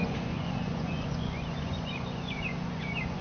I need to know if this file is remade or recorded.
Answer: remade